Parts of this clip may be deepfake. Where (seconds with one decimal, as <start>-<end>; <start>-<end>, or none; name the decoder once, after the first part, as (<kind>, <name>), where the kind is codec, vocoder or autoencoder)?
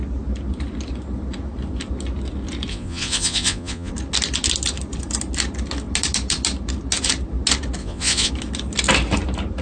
2.7-3.9 (vocoder, Vocos); 7.8-8.3